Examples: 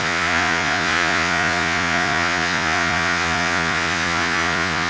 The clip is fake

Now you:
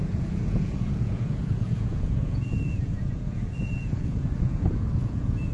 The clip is fake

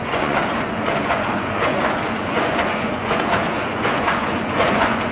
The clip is fake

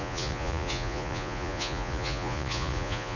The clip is fake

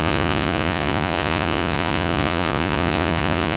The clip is fake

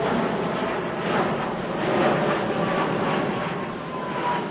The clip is real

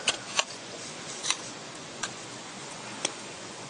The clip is fake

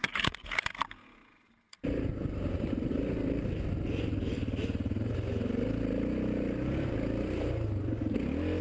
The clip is real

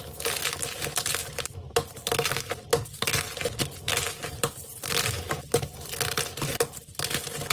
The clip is real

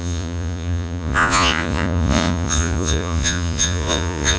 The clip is fake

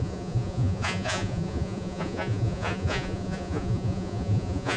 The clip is fake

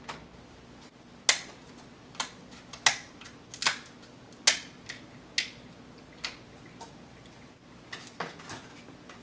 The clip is real